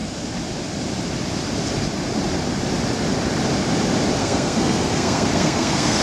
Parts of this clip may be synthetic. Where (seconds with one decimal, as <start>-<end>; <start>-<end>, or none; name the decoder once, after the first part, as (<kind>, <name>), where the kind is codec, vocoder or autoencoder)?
4.2-6.0 (codec, SNAC)

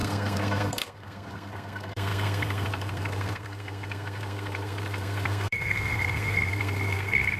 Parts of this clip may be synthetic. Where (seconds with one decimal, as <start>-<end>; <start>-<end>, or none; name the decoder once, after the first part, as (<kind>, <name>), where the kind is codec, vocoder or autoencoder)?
0.0-7.4 (codec, SNAC)

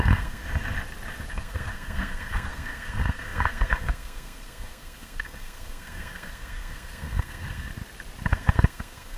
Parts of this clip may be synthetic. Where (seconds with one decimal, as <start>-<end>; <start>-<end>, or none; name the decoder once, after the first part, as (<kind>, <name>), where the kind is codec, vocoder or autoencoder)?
0.0-0.4 (codec, SNAC); 1.3-7.7; 8.3-9.2